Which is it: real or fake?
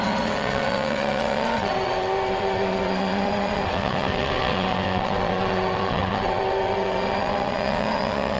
fake